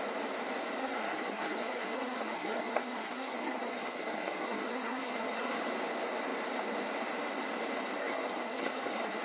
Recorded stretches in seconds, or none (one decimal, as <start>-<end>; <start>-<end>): 0.0-0.8; 5.6-8.0